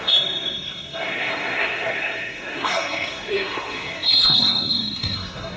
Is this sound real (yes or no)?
no